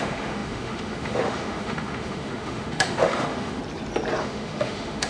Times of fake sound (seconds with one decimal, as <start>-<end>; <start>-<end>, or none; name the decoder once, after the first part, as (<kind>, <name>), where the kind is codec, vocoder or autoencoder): 0.0-3.6 (autoencoder, DAC-VAE); 4.2-5.1